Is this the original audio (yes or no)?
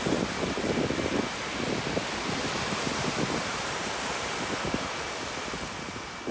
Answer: yes